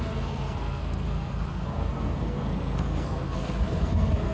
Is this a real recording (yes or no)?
no